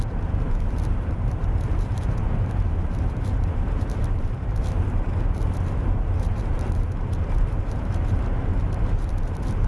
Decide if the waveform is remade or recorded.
remade